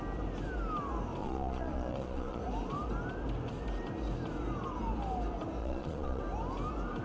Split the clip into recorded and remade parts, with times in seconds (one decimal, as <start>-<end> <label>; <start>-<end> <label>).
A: 0.0-1.2 recorded; 1.2-2.4 remade; 2.4-5.6 recorded; 5.6-6.2 remade; 6.2-7.0 recorded